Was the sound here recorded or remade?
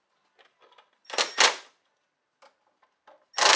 recorded